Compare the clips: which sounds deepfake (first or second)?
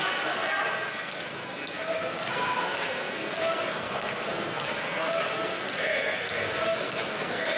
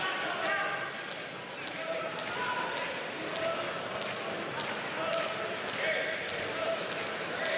first